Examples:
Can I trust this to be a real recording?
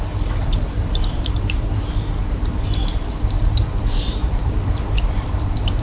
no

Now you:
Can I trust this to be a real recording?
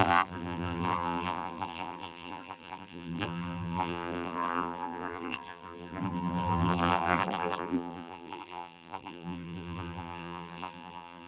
no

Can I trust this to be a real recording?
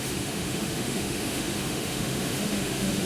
no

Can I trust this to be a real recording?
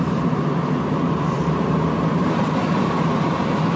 no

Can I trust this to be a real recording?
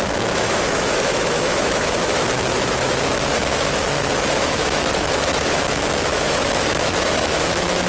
no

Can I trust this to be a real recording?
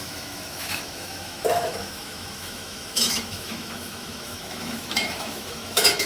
no